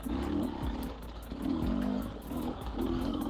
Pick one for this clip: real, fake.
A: fake